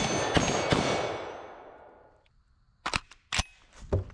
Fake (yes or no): no